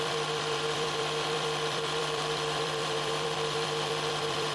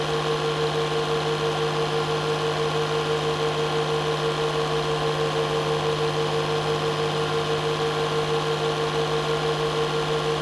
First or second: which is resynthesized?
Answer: first